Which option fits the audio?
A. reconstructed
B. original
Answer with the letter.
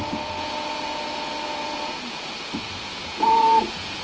A